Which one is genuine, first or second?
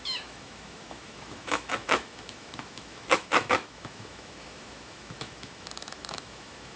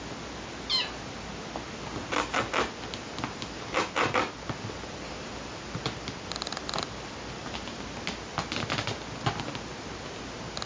second